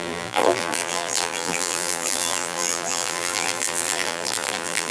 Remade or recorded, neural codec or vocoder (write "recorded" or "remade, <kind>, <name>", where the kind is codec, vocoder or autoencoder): remade, vocoder, BigVGAN v2